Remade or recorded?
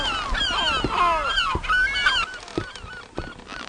recorded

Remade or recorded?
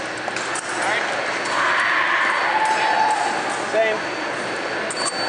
recorded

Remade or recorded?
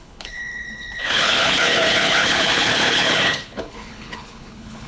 remade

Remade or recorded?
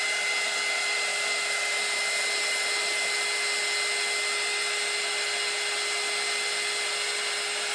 recorded